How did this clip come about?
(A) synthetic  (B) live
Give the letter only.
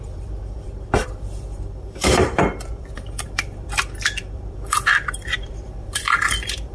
A